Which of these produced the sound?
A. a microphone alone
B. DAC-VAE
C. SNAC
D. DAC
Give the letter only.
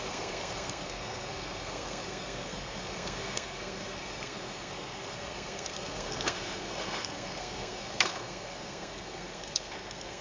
C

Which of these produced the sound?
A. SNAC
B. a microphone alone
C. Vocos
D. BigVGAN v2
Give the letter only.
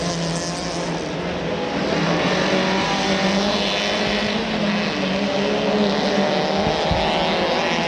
B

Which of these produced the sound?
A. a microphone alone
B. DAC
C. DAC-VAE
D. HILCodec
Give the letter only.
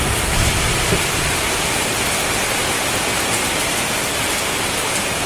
A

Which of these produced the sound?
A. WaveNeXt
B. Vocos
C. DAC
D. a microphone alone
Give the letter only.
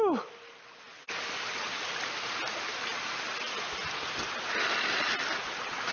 D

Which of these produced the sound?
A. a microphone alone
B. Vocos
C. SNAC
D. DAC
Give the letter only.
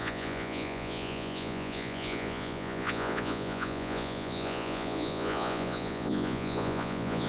B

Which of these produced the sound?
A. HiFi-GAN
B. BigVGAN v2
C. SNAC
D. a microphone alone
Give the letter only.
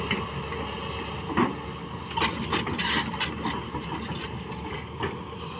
D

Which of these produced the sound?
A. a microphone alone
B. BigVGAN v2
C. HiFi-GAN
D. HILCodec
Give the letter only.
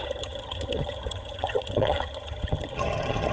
C